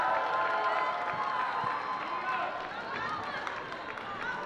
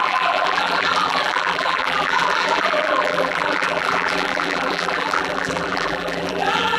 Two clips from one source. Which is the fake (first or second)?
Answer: second